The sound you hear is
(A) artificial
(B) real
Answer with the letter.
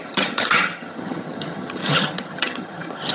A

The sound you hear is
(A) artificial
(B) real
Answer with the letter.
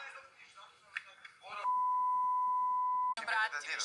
B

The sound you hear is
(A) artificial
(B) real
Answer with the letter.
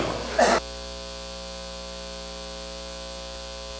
B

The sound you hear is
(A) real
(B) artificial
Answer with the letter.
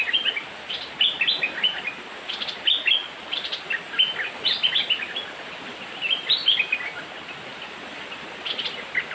A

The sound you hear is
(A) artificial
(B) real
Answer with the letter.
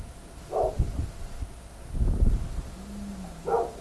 B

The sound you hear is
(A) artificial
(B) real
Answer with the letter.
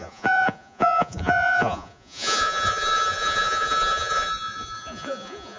A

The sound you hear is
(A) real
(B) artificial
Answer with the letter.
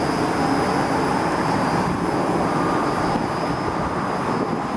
A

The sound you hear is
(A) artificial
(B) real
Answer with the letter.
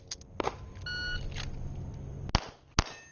B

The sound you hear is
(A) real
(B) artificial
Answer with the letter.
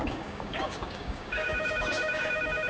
B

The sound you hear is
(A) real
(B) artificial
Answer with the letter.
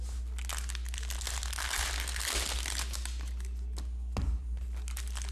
A